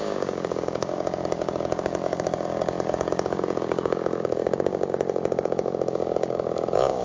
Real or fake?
fake